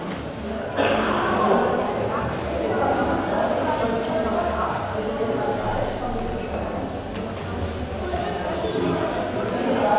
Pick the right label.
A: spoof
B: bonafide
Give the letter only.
B